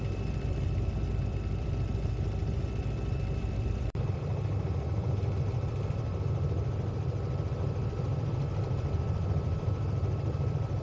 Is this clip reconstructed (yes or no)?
yes